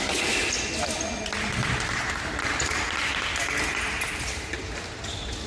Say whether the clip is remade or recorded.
recorded